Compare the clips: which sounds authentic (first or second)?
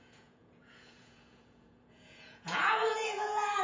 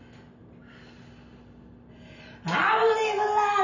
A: second